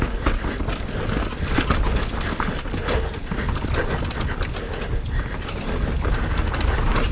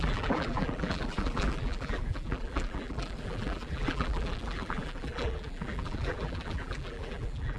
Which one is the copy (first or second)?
second